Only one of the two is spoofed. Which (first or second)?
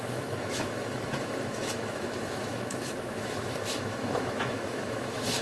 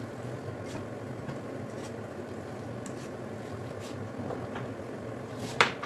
first